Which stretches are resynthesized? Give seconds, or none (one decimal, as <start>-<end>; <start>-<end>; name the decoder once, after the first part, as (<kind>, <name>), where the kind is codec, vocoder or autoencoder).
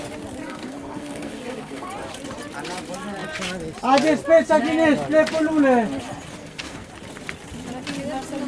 0.4-1.9 (codec, SNAC); 6.4-6.9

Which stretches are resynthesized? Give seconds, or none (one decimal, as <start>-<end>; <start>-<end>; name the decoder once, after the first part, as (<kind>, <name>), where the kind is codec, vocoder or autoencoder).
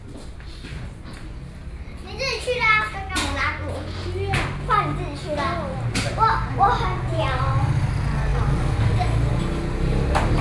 none